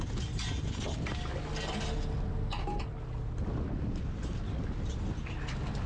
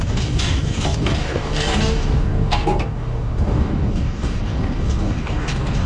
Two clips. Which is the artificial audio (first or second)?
second